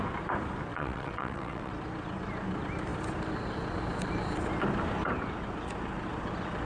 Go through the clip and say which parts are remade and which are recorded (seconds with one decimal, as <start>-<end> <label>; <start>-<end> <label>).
0.0-0.7 recorded; 0.7-1.7 remade; 1.7-6.7 recorded